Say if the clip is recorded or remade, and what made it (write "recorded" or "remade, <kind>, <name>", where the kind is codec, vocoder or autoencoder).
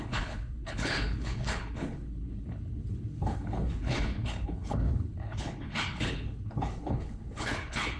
remade, codec, HILCodec